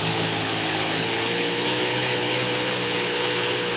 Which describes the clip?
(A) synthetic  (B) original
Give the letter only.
A